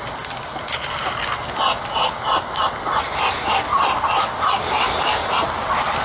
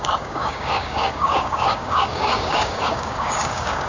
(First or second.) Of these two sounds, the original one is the first